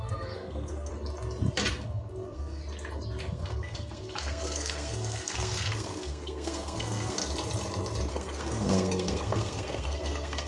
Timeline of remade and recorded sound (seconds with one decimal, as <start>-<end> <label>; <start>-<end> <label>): 0.0-0.9 remade; 0.9-1.7 recorded; 1.7-2.6 remade; 2.6-3.2 recorded; 3.2-7.2 remade; 7.2-8.1 recorded; 8.1-10.5 remade